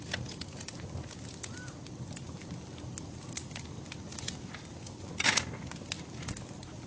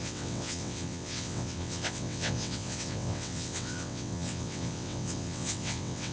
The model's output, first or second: second